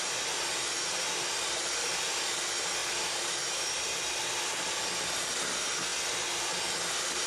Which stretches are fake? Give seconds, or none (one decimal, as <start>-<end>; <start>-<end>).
none